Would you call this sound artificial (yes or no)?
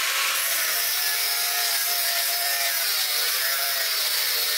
no